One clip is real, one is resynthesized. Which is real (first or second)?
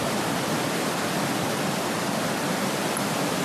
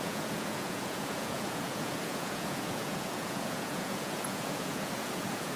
first